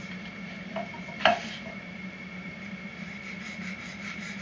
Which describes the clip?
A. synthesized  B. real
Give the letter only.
A